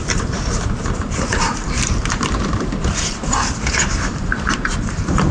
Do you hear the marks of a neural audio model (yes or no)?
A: yes